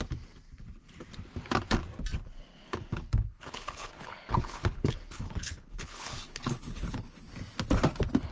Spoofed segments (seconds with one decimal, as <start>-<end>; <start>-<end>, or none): 2.6-7.2